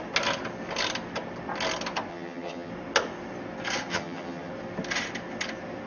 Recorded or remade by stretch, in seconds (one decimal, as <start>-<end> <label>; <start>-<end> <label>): 0.0-2.1 recorded; 2.1-2.7 remade; 2.7-3.9 recorded; 3.9-4.5 remade; 4.5-5.9 recorded